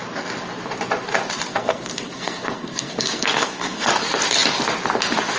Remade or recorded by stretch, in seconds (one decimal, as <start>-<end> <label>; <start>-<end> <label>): 0.0-1.5 recorded; 1.5-3.9 remade; 3.9-5.4 recorded